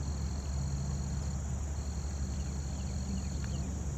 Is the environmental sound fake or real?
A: real